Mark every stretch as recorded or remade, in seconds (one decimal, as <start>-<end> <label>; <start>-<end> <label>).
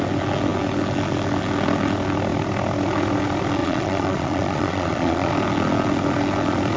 0.0-3.6 recorded; 3.6-5.3 remade; 5.3-6.8 recorded